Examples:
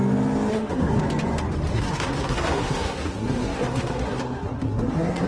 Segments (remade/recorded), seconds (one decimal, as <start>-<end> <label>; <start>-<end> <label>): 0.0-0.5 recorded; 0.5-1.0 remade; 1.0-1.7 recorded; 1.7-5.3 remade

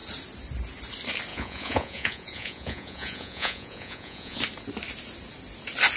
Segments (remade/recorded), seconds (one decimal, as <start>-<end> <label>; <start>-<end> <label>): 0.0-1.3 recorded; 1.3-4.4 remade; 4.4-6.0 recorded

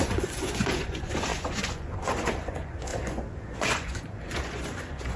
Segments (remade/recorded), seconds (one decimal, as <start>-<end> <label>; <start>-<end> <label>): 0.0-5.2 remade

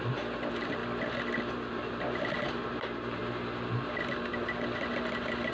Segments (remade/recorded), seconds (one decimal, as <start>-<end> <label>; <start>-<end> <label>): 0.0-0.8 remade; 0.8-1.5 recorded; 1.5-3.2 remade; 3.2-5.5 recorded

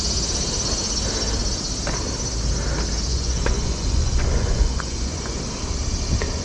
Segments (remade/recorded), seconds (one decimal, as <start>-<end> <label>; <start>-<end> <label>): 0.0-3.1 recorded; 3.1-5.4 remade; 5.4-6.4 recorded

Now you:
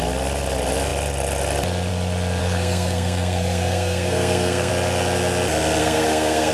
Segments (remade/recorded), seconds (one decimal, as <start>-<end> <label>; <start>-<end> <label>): 0.0-2.4 recorded; 2.4-4.7 remade; 4.7-5.8 recorded; 5.8-6.5 remade

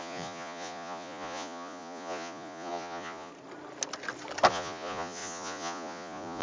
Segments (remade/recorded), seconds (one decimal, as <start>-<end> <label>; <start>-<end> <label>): 0.0-3.3 remade; 3.3-4.5 recorded; 4.5-6.4 remade

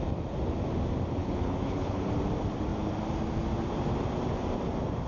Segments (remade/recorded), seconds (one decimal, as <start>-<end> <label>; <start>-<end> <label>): 0.0-1.2 recorded; 1.2-2.1 remade; 2.1-5.1 recorded